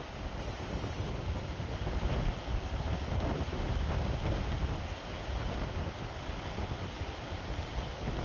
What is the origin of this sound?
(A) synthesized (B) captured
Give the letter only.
B